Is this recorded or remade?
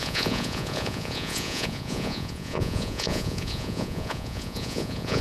remade